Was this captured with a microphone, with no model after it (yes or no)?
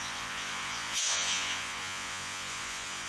no